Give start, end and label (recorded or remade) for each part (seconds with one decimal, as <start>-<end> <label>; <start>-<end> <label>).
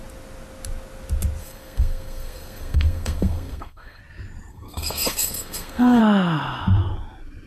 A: 0.0-1.4 recorded; 1.4-4.0 remade; 4.0-4.5 recorded; 4.5-6.0 remade; 6.0-7.5 recorded